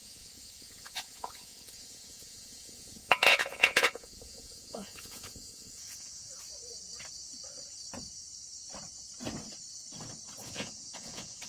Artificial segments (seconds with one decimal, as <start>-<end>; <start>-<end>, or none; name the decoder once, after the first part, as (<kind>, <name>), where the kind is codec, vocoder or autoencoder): 0.0-6.3 (vocoder, Vocos); 10.4-11.5